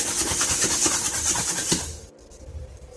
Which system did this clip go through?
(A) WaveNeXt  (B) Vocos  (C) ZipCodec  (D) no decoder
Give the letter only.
D